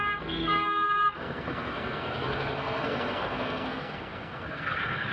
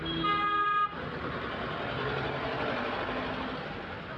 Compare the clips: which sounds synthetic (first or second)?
first